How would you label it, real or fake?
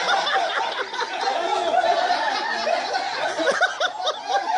real